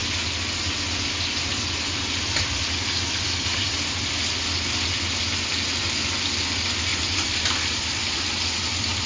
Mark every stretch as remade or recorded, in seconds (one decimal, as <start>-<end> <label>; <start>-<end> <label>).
0.0-6.9 recorded; 6.9-8.3 remade; 8.3-9.1 recorded